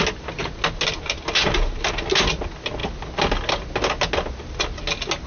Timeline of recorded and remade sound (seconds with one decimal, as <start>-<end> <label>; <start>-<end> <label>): 0.0-5.3 recorded